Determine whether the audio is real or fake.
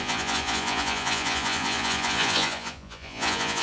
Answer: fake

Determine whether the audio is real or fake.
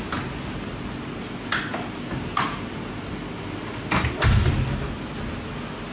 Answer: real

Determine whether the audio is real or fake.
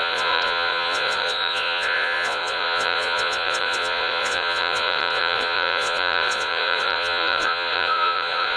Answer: fake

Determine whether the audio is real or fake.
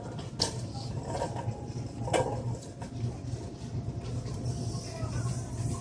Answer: real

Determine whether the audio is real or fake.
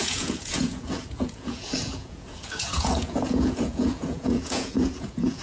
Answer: fake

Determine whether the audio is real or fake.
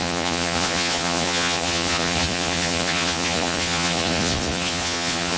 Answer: fake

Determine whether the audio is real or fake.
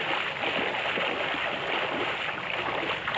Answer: real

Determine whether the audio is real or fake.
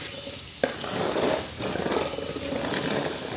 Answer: real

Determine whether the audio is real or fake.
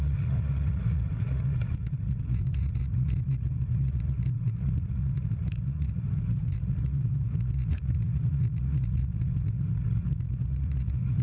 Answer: fake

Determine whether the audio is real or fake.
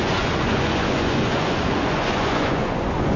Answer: fake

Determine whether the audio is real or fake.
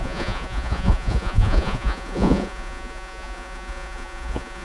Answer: fake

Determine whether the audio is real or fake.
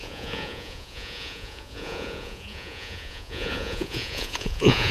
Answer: fake